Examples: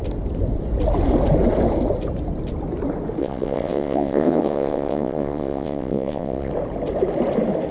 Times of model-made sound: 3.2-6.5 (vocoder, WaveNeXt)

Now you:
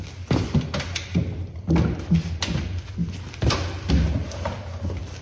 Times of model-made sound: none

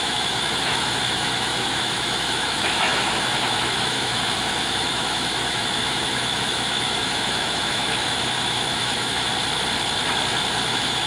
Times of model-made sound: 0.0-9.3 (autoencoder, DAC-VAE); 10.7-11.1

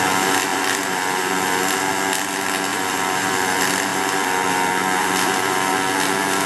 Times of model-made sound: 0.5-1.9 (vocoder, BigVGAN v2); 2.7-3.3; 3.9-5.7